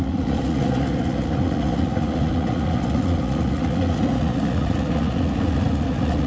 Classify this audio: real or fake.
fake